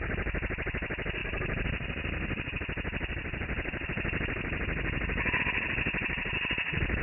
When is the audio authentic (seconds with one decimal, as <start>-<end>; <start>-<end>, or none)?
0.0-7.0